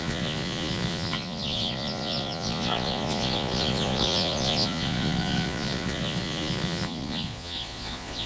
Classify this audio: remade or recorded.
remade